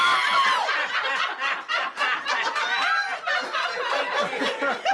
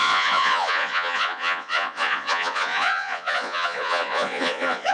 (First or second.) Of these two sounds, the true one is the first